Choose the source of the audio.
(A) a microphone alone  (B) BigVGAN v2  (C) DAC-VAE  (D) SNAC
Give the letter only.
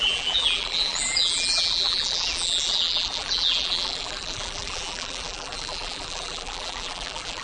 B